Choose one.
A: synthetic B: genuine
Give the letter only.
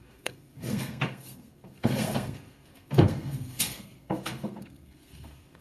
A